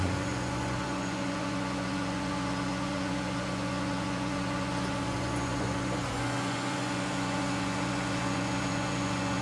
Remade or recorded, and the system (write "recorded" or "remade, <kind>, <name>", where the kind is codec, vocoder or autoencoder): remade, vocoder, Vocos